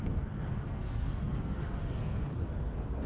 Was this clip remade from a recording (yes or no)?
yes